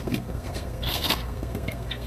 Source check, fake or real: fake